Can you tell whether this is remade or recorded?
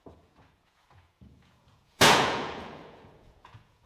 remade